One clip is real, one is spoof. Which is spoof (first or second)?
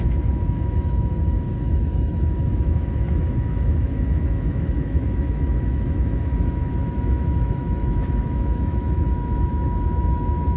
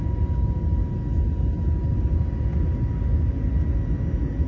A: first